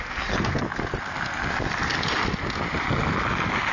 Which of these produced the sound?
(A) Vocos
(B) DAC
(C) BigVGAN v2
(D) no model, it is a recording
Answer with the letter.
D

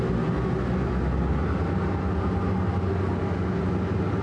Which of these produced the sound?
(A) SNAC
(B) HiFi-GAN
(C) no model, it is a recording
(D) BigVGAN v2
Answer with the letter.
C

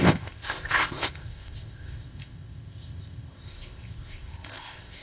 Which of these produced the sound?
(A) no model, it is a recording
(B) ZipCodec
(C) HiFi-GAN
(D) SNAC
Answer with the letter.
B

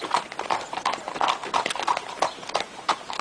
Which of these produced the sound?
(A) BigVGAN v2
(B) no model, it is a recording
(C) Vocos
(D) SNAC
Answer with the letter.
A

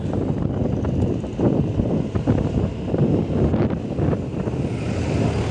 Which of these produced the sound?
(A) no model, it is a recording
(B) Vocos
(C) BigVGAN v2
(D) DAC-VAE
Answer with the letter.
A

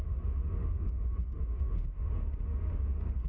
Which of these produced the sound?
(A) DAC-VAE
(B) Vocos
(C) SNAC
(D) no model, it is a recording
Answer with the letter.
A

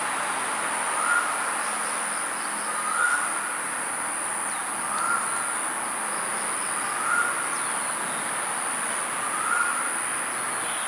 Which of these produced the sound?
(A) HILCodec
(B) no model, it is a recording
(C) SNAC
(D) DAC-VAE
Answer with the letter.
B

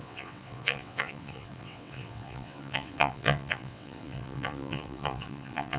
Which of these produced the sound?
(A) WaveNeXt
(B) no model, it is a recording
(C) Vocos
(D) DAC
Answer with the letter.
A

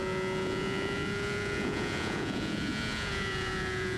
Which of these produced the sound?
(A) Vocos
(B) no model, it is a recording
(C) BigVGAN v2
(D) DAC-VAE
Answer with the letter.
A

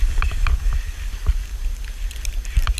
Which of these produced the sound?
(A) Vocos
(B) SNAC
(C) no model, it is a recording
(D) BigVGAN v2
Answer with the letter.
C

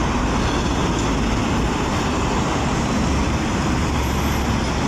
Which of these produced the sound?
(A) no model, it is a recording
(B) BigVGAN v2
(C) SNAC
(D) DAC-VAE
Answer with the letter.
A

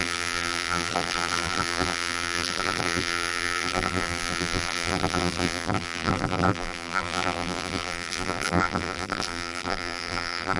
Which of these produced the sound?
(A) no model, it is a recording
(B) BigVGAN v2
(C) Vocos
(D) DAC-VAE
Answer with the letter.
B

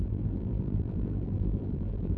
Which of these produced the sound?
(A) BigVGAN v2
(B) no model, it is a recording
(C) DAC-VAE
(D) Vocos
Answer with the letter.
A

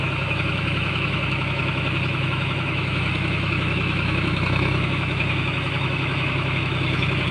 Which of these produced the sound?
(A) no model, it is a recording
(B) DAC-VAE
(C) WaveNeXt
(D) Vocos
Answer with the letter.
B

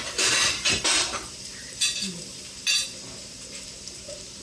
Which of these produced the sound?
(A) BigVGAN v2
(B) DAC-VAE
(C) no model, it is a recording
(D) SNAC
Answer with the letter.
A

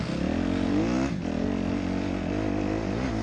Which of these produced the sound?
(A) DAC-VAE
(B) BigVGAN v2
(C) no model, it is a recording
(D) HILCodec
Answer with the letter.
C